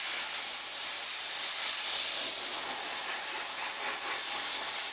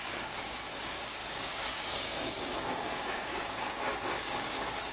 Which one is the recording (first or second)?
first